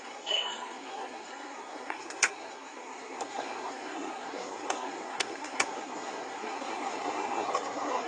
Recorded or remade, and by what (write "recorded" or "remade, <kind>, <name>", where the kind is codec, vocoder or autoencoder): remade, codec, SNAC